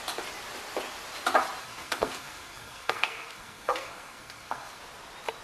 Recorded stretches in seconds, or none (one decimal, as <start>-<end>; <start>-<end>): 0.0-1.6; 4.8-5.4

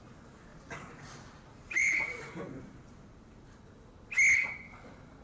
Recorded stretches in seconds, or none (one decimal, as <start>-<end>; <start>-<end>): 0.0-0.5; 3.6-5.2

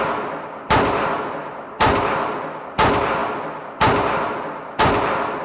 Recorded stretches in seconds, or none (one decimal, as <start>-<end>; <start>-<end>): 0.0-1.4; 2.0-5.4

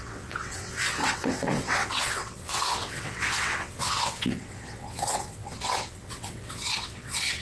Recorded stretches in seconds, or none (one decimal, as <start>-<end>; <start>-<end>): none